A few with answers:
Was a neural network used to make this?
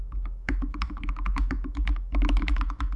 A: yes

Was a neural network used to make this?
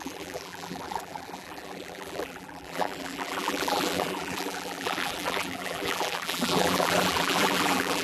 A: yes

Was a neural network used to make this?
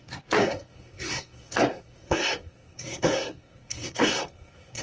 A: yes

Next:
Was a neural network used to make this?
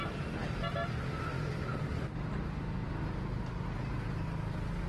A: no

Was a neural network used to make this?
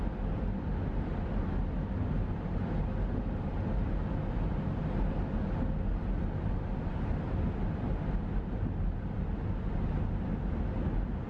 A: no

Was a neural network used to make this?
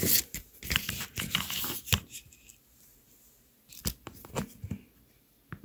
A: no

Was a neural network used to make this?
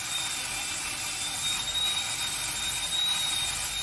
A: yes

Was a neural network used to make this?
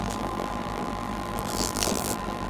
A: yes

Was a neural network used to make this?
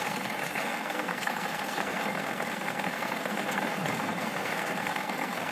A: yes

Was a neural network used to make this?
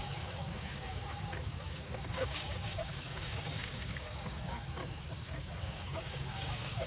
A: yes